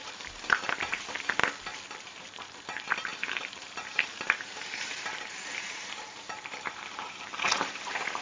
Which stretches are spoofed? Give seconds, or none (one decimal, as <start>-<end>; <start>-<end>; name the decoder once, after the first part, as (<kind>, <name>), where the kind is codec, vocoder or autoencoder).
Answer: 0.0-1.4 (vocoder, BigVGAN v2); 2.0-8.2